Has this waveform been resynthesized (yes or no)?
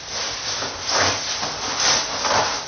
no